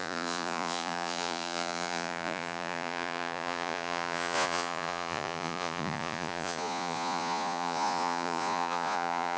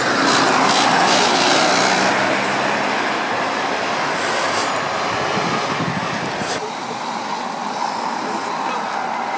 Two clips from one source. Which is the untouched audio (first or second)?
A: second